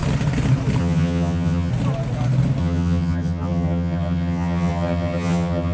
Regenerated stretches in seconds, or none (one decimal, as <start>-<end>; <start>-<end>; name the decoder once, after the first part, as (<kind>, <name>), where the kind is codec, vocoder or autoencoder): 0.8-1.7 (vocoder, HiFi-GAN); 2.6-5.7